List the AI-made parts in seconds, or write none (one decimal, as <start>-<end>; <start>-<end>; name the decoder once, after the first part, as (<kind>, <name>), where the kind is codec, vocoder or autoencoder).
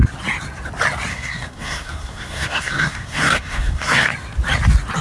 1.1-4.1 (codec, SNAC)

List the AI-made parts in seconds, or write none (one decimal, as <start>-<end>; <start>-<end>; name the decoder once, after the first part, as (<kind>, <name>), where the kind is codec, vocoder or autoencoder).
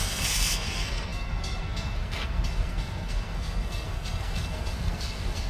0.0-5.5 (codec, SNAC)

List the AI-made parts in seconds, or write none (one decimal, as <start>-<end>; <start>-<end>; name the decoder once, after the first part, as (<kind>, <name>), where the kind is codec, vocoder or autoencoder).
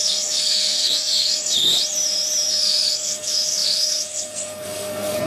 0.0-1.8 (codec, SNAC); 2.5-5.3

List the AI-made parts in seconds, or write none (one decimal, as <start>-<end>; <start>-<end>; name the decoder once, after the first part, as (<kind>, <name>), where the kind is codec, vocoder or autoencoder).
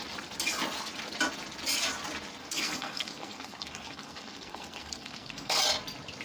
2.4-5.6 (codec, SNAC)